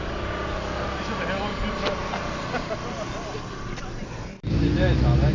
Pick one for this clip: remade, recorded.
recorded